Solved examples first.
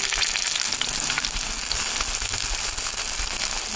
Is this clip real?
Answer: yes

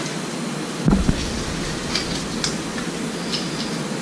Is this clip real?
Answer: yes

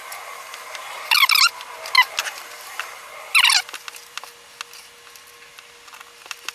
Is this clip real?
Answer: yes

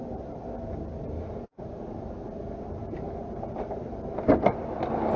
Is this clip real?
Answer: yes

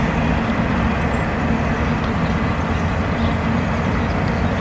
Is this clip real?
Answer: yes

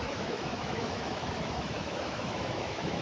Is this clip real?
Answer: no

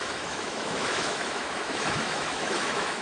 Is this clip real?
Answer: no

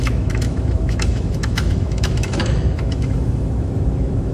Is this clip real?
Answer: no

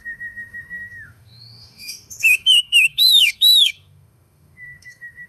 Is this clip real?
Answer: no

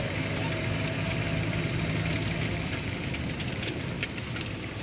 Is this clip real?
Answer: yes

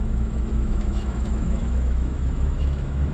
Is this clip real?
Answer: no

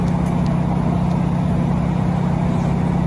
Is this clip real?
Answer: yes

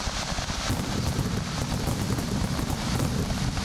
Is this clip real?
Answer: yes